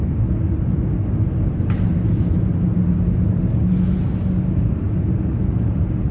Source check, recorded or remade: recorded